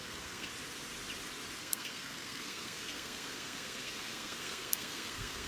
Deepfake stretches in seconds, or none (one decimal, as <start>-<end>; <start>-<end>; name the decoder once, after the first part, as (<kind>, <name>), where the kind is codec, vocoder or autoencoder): 0.0-0.5 (codec, SNAC); 1.6-5.5